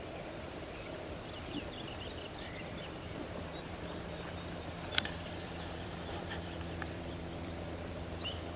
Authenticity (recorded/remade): remade